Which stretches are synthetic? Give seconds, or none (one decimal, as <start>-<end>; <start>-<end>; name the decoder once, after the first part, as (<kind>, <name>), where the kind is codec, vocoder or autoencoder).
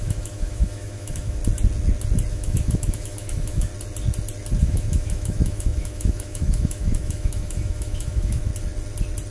0.0-1.4 (autoencoder, DAC-VAE); 2.3-3.7; 4.6-8.5